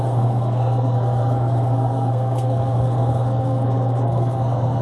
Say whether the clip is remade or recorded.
remade